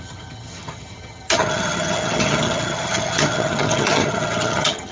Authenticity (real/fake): fake